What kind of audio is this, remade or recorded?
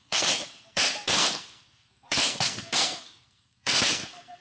remade